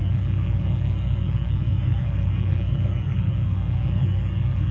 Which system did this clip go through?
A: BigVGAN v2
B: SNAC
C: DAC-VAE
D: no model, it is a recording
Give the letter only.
B